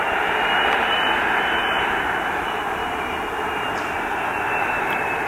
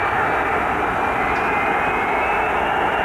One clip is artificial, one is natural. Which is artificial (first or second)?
first